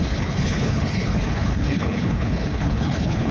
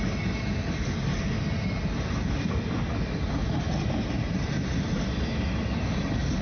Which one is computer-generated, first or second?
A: first